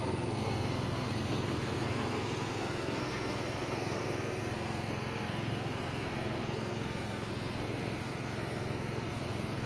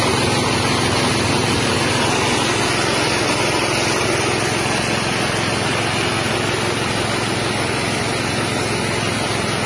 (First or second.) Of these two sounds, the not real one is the first